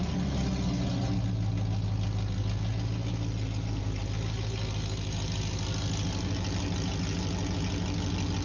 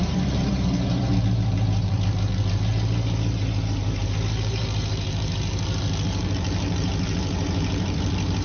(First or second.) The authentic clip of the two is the first